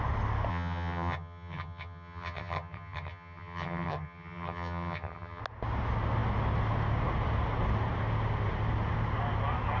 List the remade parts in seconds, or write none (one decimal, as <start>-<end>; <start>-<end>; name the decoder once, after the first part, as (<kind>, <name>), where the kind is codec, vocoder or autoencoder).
0.5-5.4 (vocoder, HiFi-GAN)

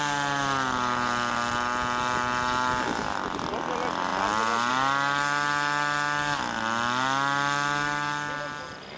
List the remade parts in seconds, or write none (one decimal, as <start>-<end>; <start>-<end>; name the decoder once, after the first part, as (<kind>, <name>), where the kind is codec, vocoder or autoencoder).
none